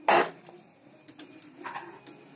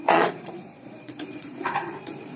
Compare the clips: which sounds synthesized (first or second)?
second